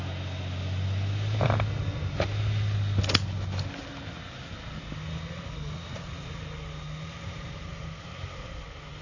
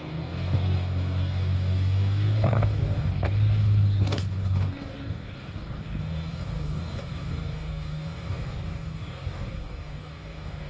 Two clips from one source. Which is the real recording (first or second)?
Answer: first